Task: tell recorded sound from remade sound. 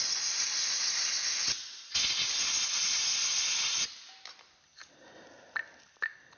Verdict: recorded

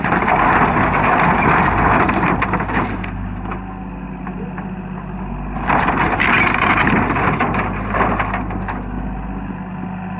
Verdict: recorded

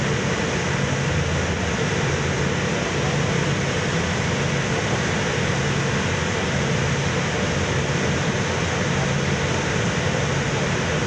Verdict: recorded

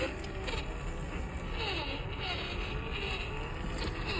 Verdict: recorded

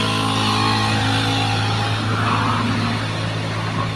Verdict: recorded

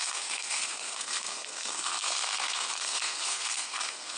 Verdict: remade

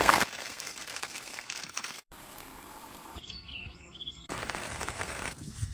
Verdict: remade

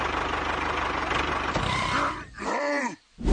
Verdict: recorded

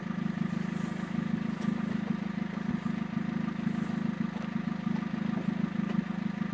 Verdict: recorded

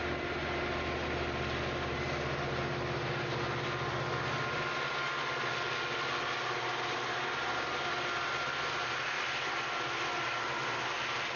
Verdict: recorded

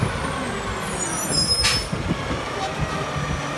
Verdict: recorded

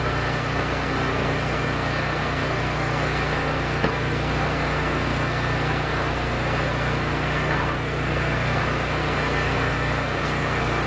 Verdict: remade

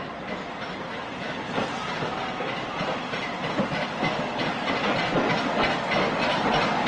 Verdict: recorded